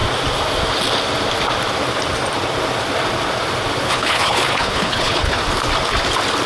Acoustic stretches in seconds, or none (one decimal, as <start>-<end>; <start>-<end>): 0.0-3.8; 5.4-6.5